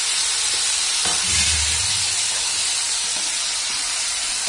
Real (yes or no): yes